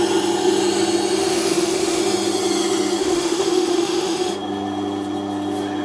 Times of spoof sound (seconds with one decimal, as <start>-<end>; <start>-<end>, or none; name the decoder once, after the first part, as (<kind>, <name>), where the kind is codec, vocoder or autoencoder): 1.2-2.0 (autoencoder, DAC-VAE); 3.0-4.3